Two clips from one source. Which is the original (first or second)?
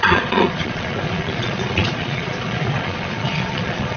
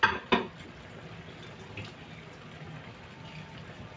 second